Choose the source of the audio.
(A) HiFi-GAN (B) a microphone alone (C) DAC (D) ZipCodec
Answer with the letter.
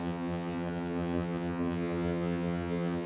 A